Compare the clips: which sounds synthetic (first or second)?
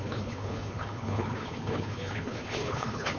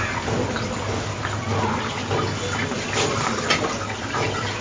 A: first